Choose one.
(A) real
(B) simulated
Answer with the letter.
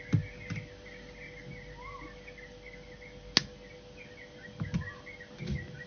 A